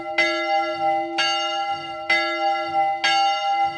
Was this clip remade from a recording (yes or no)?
no